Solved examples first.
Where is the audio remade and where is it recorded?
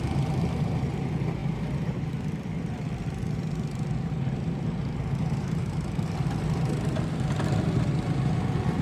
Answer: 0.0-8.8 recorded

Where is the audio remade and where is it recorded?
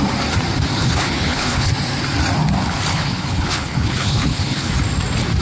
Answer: 0.0-0.7 recorded; 0.7-1.7 remade; 1.7-2.9 recorded; 2.9-4.7 remade; 4.7-5.4 recorded